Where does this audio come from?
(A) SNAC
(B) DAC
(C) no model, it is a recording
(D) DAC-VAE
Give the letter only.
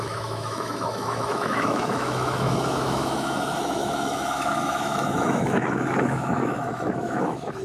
D